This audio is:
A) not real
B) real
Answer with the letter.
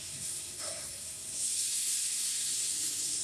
A